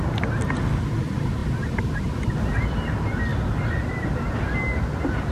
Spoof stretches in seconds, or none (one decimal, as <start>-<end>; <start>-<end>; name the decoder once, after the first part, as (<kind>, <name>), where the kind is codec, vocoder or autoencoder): none